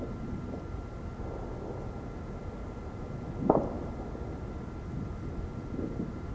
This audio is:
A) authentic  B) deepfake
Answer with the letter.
A